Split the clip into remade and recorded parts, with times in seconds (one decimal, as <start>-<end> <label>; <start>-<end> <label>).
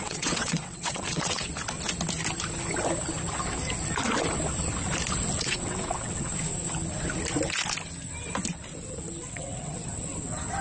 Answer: 0.0-1.5 remade; 1.5-5.4 recorded; 5.4-6.3 remade; 6.3-9.2 recorded; 9.2-9.8 remade; 9.8-10.6 recorded